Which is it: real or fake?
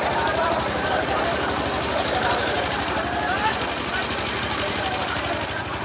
fake